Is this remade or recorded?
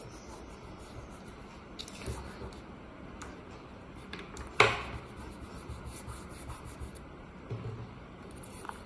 recorded